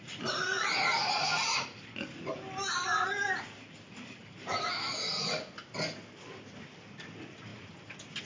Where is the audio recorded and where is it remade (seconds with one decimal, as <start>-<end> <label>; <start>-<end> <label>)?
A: 0.0-8.2 recorded